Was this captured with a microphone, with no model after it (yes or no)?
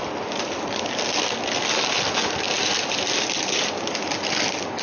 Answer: yes